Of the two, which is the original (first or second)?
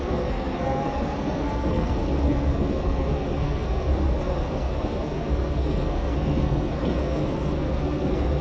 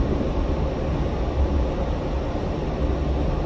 second